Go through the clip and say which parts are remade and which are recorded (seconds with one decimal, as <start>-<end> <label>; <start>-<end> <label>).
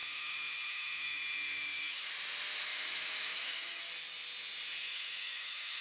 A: 0.0-2.1 remade; 2.1-2.7 recorded; 2.7-3.8 remade; 3.8-4.8 recorded; 4.8-5.8 remade